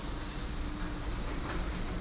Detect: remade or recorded recorded